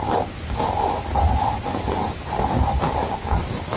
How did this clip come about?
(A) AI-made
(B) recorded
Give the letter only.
B